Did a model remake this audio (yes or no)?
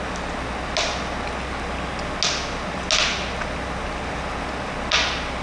no